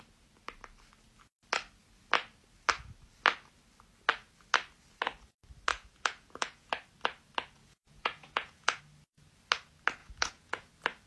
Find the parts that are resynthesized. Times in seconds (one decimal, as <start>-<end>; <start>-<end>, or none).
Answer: 5.7-6.7; 7.6-8.8; 10.0-10.7